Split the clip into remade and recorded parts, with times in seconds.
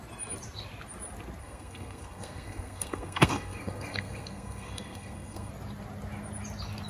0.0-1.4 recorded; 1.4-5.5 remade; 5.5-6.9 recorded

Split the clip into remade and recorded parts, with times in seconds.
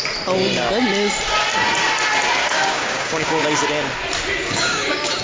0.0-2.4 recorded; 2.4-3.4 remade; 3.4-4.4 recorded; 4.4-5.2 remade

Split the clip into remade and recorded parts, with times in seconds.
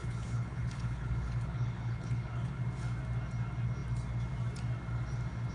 0.0-2.6 remade; 2.6-5.5 recorded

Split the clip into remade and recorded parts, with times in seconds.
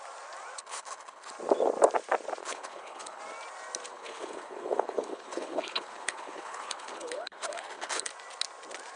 0.0-0.6 recorded; 0.6-1.3 remade; 1.3-2.4 recorded; 2.4-3.2 remade; 3.2-3.9 recorded; 3.9-8.1 remade; 8.1-9.0 recorded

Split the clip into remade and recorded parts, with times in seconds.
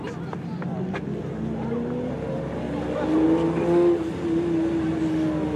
0.0-5.6 recorded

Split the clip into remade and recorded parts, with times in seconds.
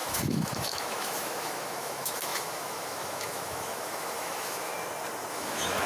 0.0-4.7 remade; 4.7-5.3 recorded; 5.3-5.9 remade